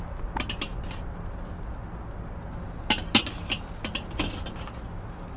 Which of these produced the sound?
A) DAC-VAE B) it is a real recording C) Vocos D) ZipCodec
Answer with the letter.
B